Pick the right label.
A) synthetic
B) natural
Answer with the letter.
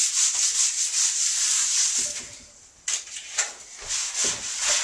B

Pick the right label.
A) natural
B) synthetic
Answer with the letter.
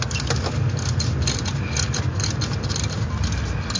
A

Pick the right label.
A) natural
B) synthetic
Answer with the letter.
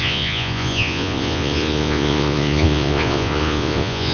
B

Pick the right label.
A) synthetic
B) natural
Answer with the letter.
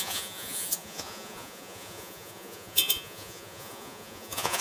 A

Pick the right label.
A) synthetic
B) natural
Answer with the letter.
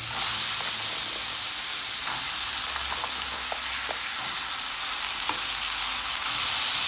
B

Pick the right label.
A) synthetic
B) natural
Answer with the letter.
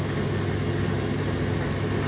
B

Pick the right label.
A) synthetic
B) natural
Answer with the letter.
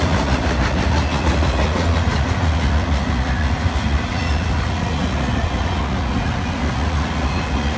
A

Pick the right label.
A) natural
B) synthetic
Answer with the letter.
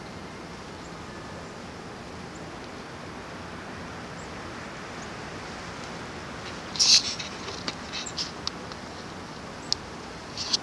A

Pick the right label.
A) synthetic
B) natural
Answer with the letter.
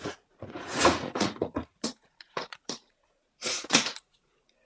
A